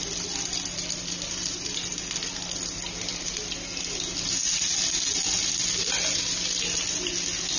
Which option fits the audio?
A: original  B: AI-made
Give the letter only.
A